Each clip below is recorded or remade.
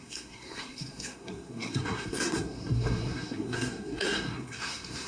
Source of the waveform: remade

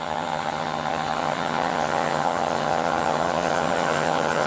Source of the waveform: remade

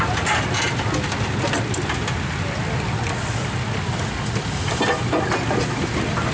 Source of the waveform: recorded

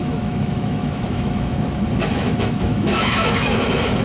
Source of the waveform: remade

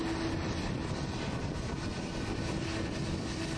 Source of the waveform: recorded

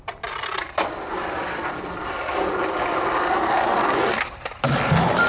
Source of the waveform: recorded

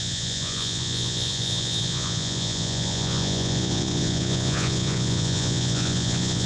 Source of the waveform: remade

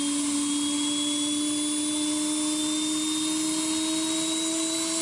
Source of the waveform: recorded